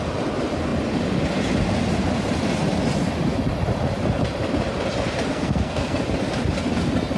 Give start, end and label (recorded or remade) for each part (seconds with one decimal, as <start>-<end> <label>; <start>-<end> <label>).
0.0-5.3 recorded; 5.3-6.0 remade; 6.0-7.2 recorded